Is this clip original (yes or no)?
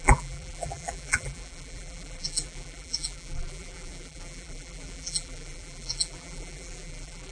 no